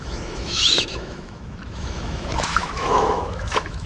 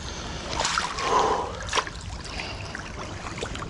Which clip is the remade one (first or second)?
first